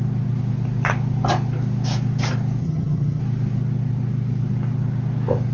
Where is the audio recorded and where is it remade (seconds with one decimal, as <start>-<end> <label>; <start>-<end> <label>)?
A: 0.0-2.6 recorded; 2.6-3.2 remade; 3.2-5.5 recorded